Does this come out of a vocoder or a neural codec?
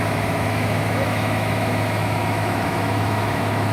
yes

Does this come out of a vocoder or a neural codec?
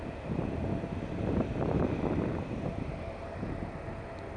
no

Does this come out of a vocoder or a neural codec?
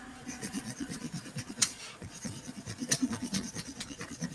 yes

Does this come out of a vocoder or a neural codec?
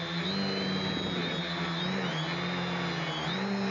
no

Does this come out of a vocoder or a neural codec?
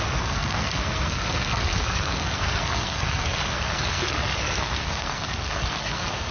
yes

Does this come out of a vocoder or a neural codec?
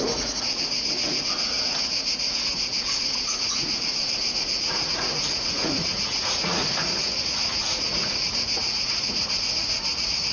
yes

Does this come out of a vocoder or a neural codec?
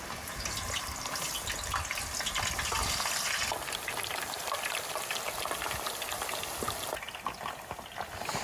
no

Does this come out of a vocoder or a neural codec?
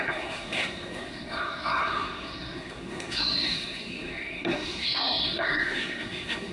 yes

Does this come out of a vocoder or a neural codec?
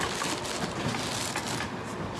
no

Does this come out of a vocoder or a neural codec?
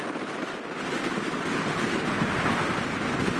no